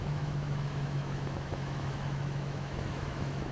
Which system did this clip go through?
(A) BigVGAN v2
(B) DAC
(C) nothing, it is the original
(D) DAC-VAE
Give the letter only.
D